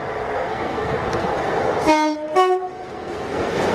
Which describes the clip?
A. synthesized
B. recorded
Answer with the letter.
A